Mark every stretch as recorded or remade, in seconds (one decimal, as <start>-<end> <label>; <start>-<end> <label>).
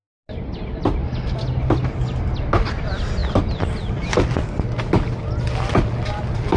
0.0-6.6 recorded